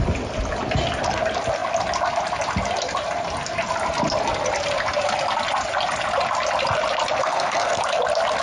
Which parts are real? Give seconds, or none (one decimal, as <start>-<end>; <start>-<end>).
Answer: 0.0-7.2; 7.8-8.4

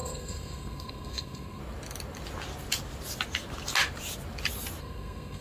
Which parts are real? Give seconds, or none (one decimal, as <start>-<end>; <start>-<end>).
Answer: 1.6-4.8

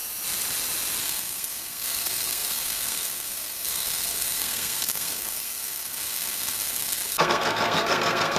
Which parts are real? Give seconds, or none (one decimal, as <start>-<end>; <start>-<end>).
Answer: 0.0-1.0